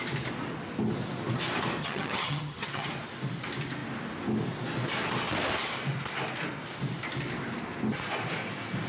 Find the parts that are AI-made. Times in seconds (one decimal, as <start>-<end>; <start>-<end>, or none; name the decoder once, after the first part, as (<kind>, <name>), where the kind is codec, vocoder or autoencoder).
1.8-2.9 (vocoder, HiFi-GAN)